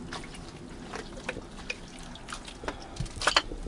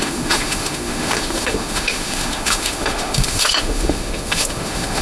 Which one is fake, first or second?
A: second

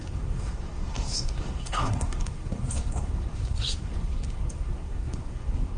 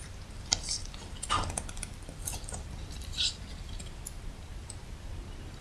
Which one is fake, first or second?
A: first